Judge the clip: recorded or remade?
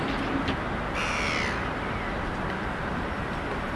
recorded